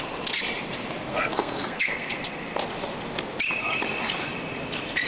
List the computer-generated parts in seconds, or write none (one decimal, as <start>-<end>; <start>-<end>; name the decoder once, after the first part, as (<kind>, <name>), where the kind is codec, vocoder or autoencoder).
1.1-2.2 (codec, SNAC)